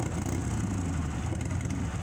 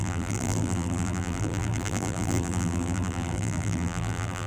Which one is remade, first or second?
second